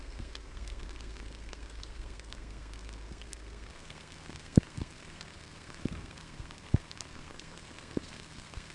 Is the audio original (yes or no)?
no